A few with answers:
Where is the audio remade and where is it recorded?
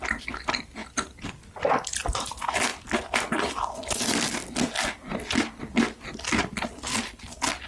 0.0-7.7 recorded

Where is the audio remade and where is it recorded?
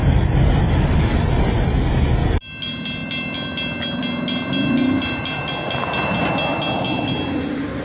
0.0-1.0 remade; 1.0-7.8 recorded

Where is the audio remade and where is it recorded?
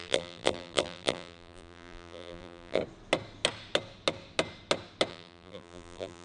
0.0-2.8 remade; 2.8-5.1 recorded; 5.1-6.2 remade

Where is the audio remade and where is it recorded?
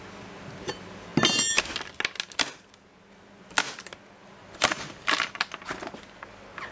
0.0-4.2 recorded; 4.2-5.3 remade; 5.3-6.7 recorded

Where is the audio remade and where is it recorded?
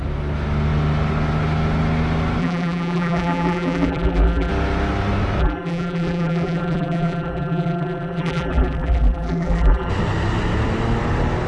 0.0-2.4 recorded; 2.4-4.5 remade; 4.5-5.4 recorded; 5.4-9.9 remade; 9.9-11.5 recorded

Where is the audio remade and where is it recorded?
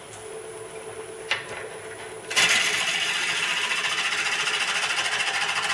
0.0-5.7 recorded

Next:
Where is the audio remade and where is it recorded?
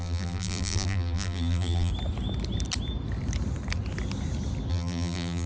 0.0-1.9 remade; 1.9-4.7 recorded; 4.7-5.5 remade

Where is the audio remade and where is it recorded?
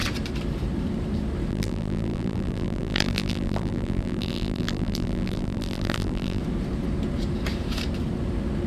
0.0-1.5 recorded; 1.5-6.4 remade; 6.4-8.7 recorded